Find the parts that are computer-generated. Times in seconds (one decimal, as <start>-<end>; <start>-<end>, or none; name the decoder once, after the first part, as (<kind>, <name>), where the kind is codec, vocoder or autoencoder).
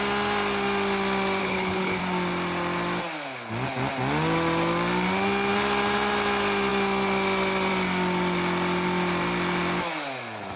1.4-2.0 (codec, HILCodec)